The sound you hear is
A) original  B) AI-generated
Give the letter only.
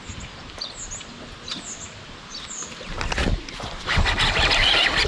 A